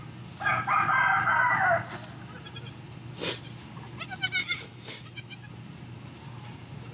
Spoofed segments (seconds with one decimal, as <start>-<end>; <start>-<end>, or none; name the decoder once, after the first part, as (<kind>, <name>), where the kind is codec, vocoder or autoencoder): 4.4-5.5 (autoencoder, DAC-VAE)